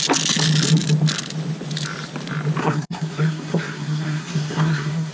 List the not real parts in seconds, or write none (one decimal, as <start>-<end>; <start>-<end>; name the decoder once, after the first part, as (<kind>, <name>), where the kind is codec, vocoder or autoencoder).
2.6-5.1 (codec, SNAC)